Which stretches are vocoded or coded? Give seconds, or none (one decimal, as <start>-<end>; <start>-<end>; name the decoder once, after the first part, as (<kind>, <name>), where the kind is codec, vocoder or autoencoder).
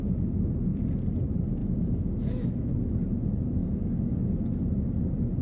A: 1.6-2.7 (autoencoder, DAC-VAE); 3.6-4.2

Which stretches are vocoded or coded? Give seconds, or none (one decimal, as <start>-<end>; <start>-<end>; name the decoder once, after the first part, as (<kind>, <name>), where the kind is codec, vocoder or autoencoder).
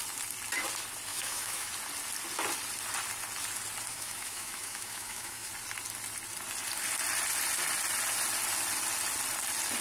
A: 1.1-1.7 (autoencoder, DAC-VAE); 3.9-5.5